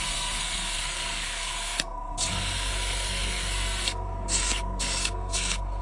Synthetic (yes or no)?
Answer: yes